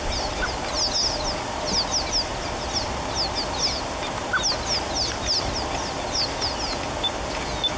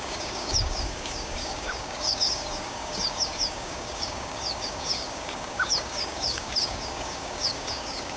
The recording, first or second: first